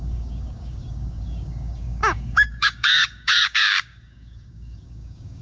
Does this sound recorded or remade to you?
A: remade